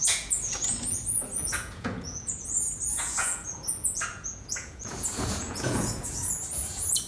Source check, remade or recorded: remade